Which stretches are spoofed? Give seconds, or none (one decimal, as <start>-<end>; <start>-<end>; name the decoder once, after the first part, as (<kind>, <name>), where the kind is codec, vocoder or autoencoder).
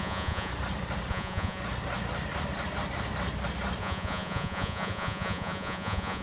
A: 0.0-0.5 (vocoder, Vocos); 1.1-1.6; 3.8-6.2